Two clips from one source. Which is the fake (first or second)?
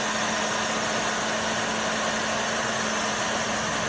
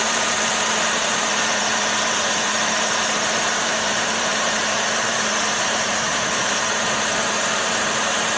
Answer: second